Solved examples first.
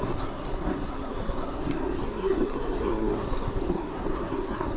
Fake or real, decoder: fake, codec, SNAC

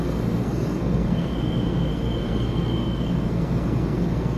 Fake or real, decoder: fake, codec, SNAC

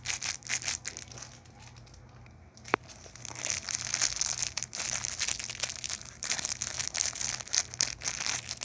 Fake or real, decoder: real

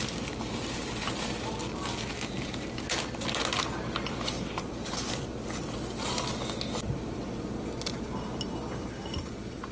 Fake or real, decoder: real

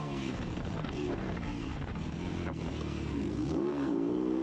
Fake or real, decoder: fake, codec, SNAC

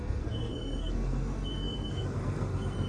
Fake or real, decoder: fake, codec, SNAC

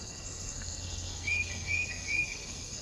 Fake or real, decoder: fake, codec, SNAC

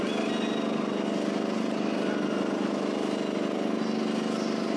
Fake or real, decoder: real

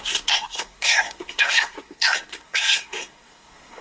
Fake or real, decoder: fake, codec, SNAC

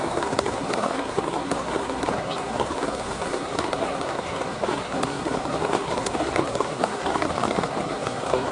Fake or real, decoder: fake, codec, SNAC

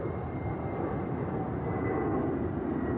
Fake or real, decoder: real